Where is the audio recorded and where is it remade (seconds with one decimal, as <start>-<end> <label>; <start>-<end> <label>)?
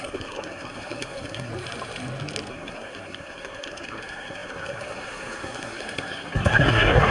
0.0-1.5 remade; 1.5-2.5 recorded; 2.5-7.1 remade